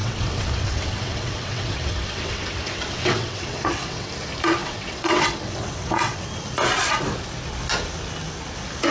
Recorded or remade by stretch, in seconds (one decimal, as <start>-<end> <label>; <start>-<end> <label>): 0.0-4.1 remade; 4.1-4.6 recorded; 4.6-6.3 remade; 6.3-8.9 recorded

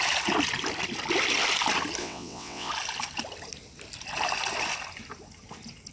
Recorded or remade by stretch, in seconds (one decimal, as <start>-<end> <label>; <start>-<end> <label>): 0.0-2.0 recorded; 2.0-2.7 remade; 2.7-5.9 recorded

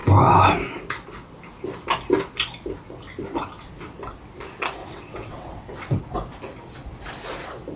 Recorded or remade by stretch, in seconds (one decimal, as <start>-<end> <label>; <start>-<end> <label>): 0.0-4.8 recorded; 4.8-6.0 remade; 6.0-7.8 recorded

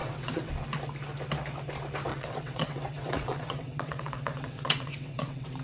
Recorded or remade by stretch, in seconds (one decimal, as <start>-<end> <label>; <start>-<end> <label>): 0.0-0.5 remade; 0.5-2.1 recorded; 2.1-5.6 remade

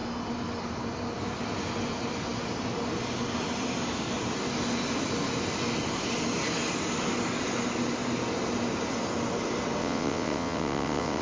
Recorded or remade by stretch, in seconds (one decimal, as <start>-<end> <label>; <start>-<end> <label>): 0.0-9.8 recorded; 9.8-11.2 remade

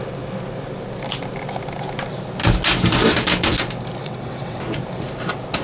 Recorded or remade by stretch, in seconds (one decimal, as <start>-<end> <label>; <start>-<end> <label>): 0.0-4.0 recorded; 4.0-4.6 remade; 4.6-5.6 recorded

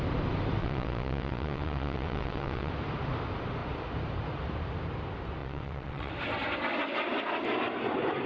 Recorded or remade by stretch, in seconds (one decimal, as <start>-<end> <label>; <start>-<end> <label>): 0.0-0.6 recorded; 0.6-2.7 remade; 2.7-5.4 recorded; 5.4-6.1 remade; 6.1-8.3 recorded

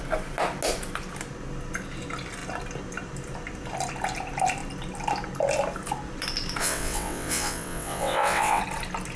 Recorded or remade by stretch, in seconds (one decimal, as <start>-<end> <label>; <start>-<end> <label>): 0.0-6.6 recorded; 6.6-8.6 remade; 8.6-9.2 recorded